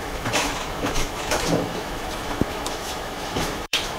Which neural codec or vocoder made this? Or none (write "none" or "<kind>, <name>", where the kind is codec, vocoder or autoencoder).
autoencoder, DAC-VAE